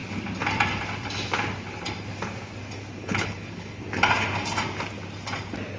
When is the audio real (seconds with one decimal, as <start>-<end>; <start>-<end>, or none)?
0.0-3.0; 3.8-5.8